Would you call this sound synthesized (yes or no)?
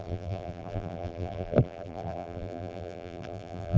yes